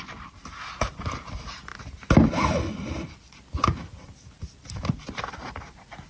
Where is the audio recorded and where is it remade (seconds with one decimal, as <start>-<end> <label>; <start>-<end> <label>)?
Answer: 0.0-6.1 recorded